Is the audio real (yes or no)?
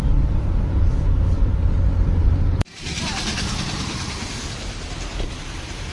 no